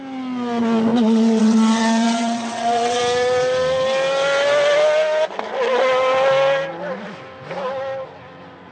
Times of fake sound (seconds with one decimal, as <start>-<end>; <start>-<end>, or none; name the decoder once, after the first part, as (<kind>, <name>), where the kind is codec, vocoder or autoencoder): 0.9-3.0 (vocoder, WaveNeXt)

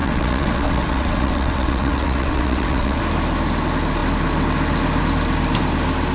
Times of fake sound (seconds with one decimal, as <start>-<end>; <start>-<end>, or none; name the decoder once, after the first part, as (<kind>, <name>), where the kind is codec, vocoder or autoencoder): 0.0-3.0 (vocoder, WaveNeXt)

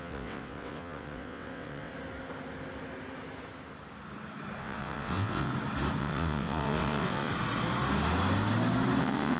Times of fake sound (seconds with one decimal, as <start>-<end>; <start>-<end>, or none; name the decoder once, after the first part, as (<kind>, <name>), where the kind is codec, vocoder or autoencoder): 0.0-1.9 (vocoder, WaveNeXt); 4.6-5.5; 6.0-7.3; 9.0-9.4

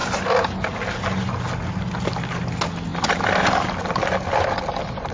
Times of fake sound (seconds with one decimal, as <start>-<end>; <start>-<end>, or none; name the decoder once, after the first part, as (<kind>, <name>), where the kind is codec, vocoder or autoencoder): none

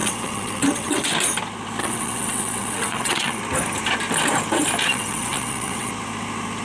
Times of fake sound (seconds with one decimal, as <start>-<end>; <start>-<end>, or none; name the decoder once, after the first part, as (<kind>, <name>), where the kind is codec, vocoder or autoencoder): 0.0-1.1 (vocoder, WaveNeXt); 1.8-3.4; 4.8-5.9

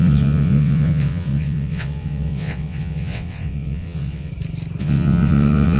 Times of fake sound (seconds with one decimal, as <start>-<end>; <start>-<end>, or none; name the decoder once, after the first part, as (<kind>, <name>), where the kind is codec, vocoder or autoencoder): 0.0-4.3 (vocoder, WaveNeXt); 4.8-5.8

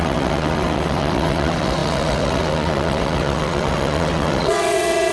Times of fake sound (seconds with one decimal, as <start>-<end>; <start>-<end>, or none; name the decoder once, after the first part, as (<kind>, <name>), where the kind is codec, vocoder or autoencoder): 0.0-5.1 (vocoder, WaveNeXt)

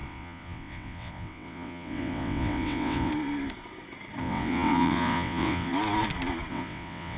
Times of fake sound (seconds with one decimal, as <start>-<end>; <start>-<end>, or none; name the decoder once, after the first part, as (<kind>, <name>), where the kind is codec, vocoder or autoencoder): 0.0-3.1 (vocoder, WaveNeXt); 4.2-5.7; 6.5-7.2